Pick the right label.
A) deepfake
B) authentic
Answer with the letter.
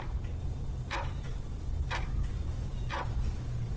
B